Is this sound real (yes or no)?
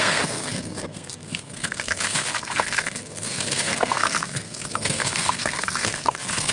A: no